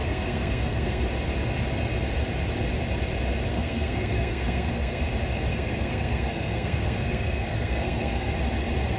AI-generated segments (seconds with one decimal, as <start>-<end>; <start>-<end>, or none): 0.0-1.0; 3.5-5.0; 5.5-8.3

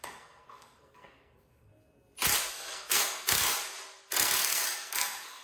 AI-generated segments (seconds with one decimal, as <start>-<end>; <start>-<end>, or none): 0.0-1.7; 2.5-3.6; 4.1-5.4

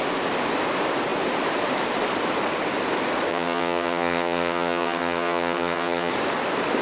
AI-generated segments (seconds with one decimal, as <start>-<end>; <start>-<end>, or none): 3.3-6.1

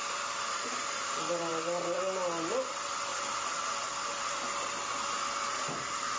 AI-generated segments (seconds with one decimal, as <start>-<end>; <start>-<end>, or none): 0.0-3.1; 5.4-6.2

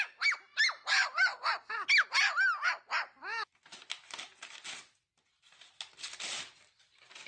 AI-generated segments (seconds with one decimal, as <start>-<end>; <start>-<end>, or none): none

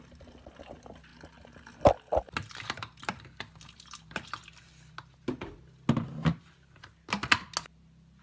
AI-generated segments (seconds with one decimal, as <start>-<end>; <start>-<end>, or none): none

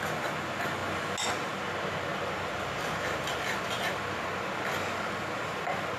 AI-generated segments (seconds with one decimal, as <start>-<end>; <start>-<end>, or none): none